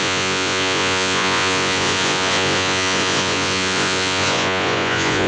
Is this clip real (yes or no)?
no